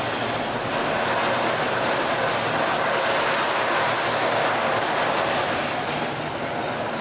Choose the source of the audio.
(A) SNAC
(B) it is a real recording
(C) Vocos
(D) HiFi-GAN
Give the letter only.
B